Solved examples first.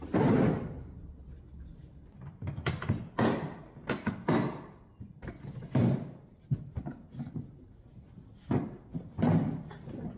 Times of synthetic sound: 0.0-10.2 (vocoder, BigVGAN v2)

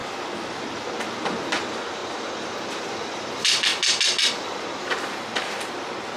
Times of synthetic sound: 0.6-3.7 (vocoder, BigVGAN v2); 4.3-6.2

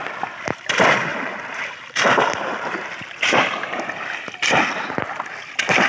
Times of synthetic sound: 1.1-4.3 (vocoder, BigVGAN v2)